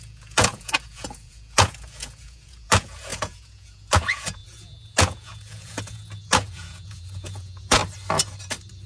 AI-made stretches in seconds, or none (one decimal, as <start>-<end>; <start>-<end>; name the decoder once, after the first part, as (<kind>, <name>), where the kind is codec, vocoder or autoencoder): 0.0-7.8 (vocoder, Vocos)